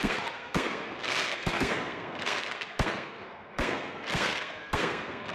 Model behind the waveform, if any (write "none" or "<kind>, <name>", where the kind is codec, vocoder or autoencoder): codec, SNAC